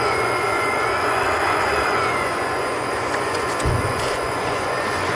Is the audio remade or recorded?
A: remade